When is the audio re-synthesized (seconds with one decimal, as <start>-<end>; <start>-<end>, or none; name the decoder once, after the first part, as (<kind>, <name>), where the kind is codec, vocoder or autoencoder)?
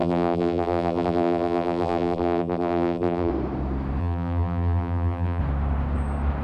0.0-3.3 (vocoder, BigVGAN v2); 4.0-5.4